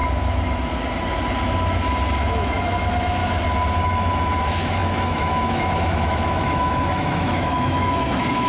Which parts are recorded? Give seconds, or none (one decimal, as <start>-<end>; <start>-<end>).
0.0-2.3; 3.2-3.8